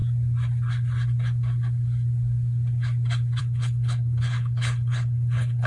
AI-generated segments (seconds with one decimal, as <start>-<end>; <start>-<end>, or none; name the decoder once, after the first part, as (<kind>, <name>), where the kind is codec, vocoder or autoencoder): 3.4-5.7 (codec, HILCodec)